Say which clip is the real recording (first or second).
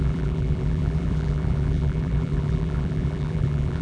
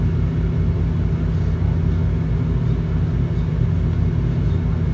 second